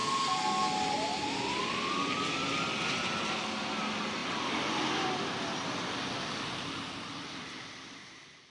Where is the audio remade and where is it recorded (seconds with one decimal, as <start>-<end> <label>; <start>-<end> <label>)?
0.0-8.5 recorded